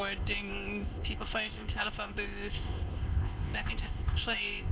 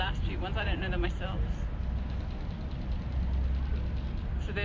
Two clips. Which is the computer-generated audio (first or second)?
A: first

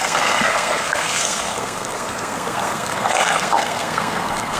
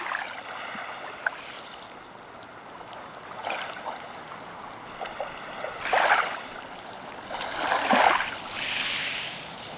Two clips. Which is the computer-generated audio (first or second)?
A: first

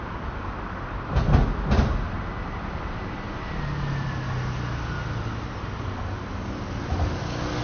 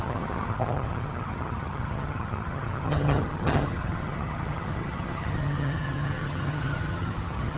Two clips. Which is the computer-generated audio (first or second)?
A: second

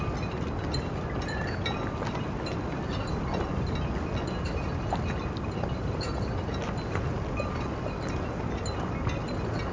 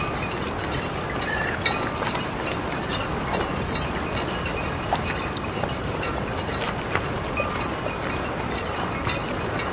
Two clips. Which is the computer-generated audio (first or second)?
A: second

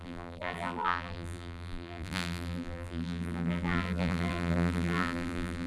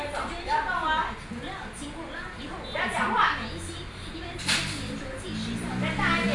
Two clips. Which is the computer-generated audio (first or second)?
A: first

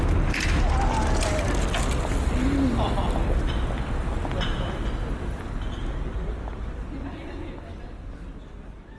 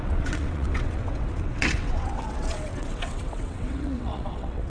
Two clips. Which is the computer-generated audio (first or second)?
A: second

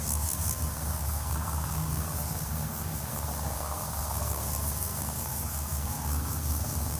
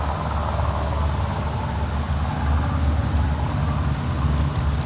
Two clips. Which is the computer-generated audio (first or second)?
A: first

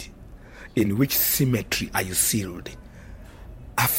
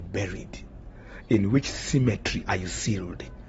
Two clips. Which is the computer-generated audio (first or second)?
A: first